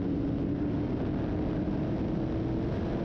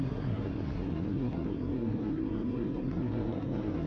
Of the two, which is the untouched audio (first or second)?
first